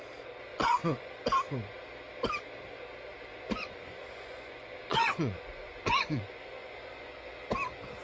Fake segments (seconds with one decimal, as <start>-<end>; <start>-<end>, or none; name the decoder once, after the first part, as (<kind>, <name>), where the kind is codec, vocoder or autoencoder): 0.5-1.1 (vocoder, Vocos); 3.3-7.3